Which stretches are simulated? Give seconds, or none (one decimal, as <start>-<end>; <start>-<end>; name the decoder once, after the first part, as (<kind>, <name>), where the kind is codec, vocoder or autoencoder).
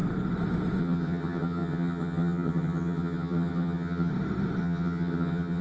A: 0.8-4.1 (vocoder, HiFi-GAN); 4.6-5.6